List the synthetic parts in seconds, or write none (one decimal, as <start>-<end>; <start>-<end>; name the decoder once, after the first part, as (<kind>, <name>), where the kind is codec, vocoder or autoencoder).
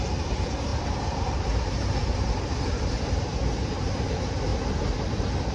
0.0-4.5 (vocoder, BigVGAN v2)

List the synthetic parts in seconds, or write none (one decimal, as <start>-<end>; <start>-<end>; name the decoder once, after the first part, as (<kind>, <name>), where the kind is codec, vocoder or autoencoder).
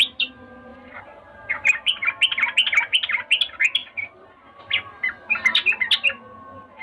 0.7-2.1 (vocoder, BigVGAN v2); 3.8-4.6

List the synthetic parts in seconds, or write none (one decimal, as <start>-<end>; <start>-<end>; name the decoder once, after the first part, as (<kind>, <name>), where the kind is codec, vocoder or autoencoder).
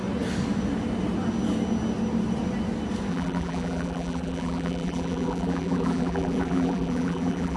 3.1-7.6 (vocoder, BigVGAN v2)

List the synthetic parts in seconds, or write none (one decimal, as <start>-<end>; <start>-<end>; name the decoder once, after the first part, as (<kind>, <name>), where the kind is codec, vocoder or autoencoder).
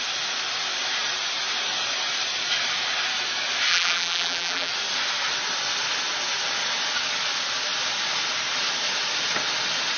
3.7-4.7 (vocoder, BigVGAN v2)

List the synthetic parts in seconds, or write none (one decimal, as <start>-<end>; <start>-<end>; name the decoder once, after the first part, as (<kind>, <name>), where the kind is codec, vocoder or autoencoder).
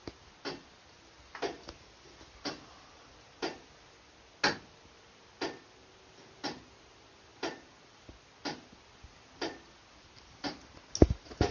none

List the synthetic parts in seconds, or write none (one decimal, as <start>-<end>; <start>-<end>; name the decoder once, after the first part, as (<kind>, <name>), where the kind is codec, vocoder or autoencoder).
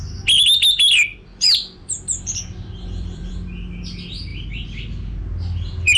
1.1-3.3 (vocoder, BigVGAN v2)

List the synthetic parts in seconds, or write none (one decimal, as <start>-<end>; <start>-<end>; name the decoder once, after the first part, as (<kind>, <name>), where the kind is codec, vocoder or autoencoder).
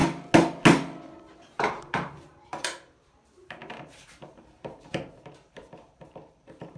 1.5-6.8 (vocoder, BigVGAN v2)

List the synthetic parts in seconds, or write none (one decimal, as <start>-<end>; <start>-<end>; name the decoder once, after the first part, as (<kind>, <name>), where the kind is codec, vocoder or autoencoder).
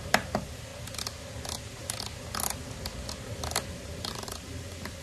0.0-0.7 (vocoder, BigVGAN v2); 3.7-5.0